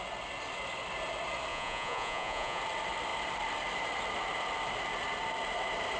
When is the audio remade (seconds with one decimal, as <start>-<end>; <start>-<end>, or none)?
1.5-2.6